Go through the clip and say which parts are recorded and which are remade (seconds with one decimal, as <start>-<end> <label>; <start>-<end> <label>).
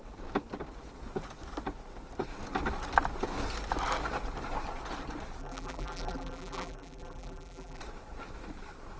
0.0-5.4 recorded; 5.4-7.8 remade; 7.8-9.0 recorded